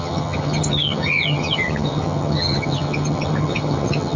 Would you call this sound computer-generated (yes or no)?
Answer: yes